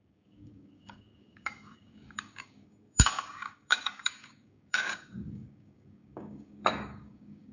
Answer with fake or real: fake